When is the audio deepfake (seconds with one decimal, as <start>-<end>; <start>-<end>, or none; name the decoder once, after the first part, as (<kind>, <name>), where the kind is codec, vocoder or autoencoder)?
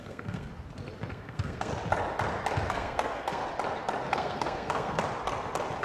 0.0-0.5 (codec, SNAC); 1.1-1.7; 2.7-3.4; 4.1-5.0